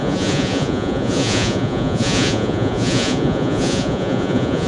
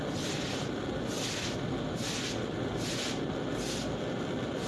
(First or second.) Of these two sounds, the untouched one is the second